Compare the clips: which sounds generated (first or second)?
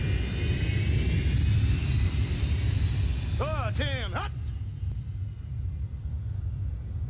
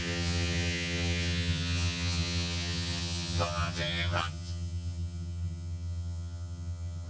second